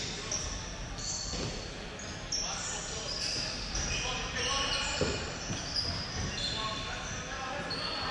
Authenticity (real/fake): real